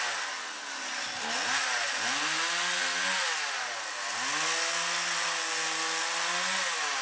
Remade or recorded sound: recorded